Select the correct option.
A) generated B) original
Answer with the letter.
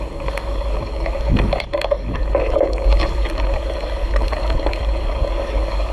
A